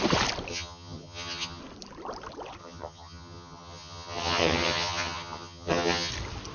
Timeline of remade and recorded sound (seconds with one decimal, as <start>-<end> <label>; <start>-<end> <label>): 0.0-0.5 recorded; 0.5-1.6 remade; 1.6-2.6 recorded; 2.6-6.1 remade; 6.1-6.5 recorded